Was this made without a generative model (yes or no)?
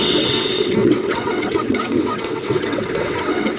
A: no